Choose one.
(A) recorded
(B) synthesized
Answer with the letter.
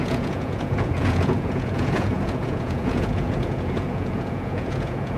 B